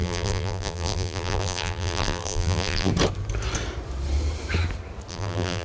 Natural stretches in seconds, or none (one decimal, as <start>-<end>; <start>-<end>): 2.9-5.1